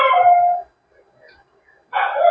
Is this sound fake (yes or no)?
no